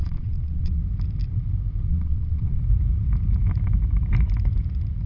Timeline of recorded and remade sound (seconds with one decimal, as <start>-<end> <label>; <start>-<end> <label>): 0.0-0.8 remade; 0.8-1.9 recorded; 1.9-2.6 remade; 2.6-5.1 recorded